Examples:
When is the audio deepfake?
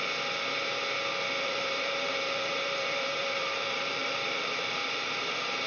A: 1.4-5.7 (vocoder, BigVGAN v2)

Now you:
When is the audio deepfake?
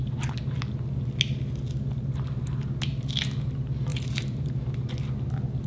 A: 3.9-4.9 (vocoder, BigVGAN v2)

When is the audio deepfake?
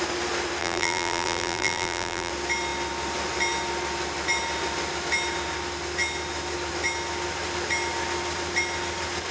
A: 0.6-2.3 (vocoder, BigVGAN v2)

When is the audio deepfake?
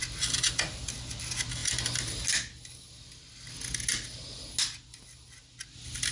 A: none